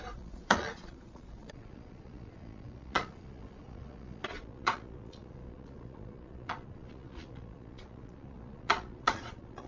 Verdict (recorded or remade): remade